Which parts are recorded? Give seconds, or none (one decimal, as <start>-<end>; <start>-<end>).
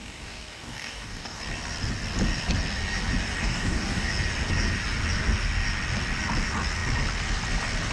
1.4-3.4; 4.1-7.9